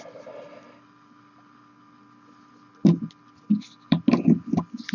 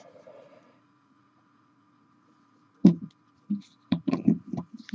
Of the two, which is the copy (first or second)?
second